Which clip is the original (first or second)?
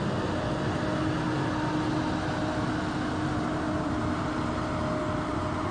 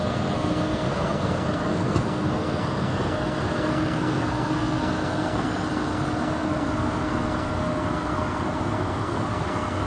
first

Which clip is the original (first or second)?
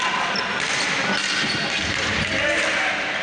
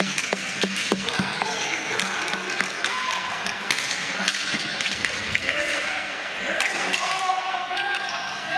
first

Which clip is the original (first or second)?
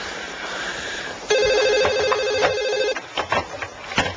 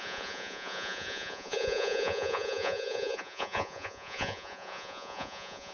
first